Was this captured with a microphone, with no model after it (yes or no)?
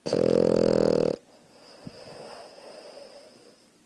yes